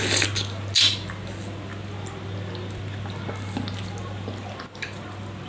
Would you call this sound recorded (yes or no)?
yes